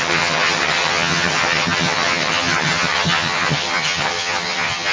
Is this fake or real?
fake